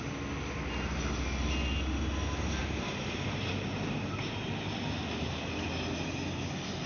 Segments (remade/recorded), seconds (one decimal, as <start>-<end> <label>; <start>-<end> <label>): 0.0-2.6 recorded; 2.6-3.5 remade; 3.5-6.9 recorded

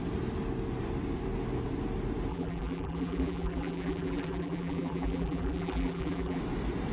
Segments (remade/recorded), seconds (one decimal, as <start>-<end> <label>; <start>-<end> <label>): 0.0-2.3 recorded; 2.3-6.4 remade; 6.4-6.9 recorded

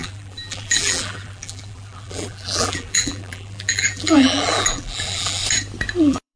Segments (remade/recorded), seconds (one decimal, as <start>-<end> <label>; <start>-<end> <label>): 0.0-5.4 remade; 5.4-6.0 recorded; 6.0-6.4 remade

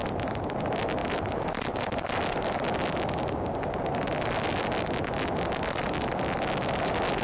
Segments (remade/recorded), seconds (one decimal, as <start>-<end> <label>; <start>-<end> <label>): 0.0-0.6 remade; 0.6-7.2 recorded

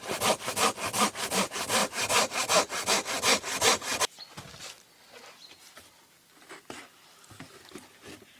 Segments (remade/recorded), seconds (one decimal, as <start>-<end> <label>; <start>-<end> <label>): 0.0-8.4 recorded

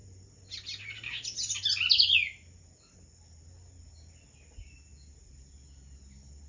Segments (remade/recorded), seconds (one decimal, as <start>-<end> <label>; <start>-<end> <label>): 0.0-6.5 recorded

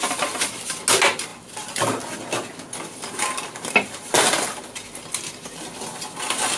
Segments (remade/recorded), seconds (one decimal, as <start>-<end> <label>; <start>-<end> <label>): 0.0-6.6 recorded